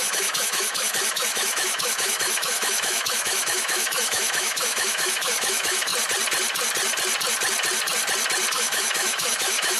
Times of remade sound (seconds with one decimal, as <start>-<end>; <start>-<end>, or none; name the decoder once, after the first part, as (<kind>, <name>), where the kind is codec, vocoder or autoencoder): 0.0-5.9 (autoencoder, DAC-VAE); 8.5-9.8